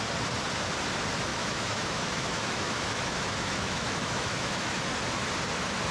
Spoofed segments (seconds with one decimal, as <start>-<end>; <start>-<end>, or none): 1.3-4.8